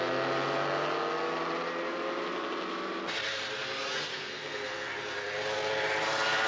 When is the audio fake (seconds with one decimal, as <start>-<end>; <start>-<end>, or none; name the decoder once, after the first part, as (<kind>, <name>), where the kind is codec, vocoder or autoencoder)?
4.1-4.9 (codec, SNAC)